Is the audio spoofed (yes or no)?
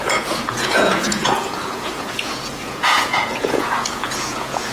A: yes